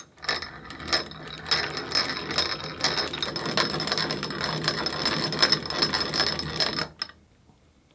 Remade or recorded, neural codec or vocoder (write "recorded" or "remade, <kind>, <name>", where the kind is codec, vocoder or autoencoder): recorded